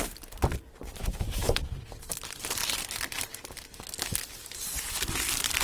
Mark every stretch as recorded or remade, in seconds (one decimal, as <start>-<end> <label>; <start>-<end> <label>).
0.0-1.4 remade; 1.4-2.0 recorded; 2.0-5.6 remade